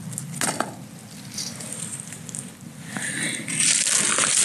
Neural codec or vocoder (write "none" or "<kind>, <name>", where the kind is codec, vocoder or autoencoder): none